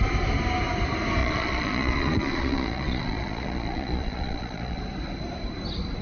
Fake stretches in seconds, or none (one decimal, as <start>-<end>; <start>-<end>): 1.2-4.8